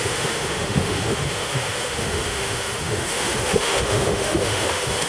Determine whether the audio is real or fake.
fake